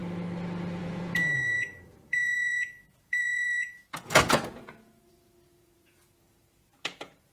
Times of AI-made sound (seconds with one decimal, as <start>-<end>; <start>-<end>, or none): 0.8-7.3